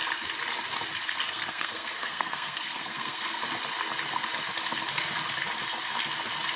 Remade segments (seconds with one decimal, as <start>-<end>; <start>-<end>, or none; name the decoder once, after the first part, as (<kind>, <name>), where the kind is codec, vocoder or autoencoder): 1.3-3.4 (codec, SNAC)